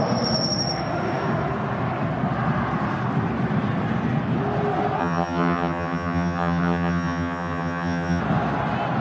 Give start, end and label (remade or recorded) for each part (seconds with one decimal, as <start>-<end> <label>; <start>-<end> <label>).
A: 0.0-5.0 recorded; 5.0-8.2 remade; 8.2-9.0 recorded